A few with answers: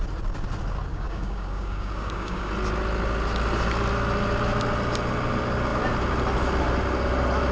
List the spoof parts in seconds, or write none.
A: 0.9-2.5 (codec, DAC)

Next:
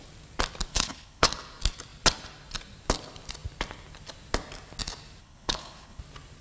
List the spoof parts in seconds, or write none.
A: 0.7-1.3 (codec, HILCodec); 5.2-6.0

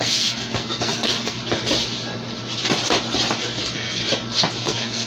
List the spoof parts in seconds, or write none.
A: 0.0-1.4 (codec, SNAC); 3.6-4.0; 4.6-5.1